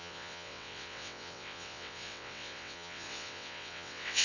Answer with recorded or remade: remade